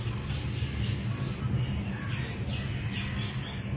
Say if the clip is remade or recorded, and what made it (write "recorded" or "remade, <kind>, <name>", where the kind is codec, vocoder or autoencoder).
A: recorded